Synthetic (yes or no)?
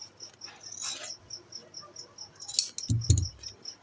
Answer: no